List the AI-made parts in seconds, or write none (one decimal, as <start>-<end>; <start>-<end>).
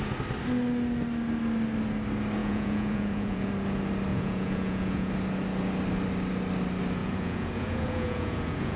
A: 2.4-3.5; 4.1-5.1; 7.0-8.8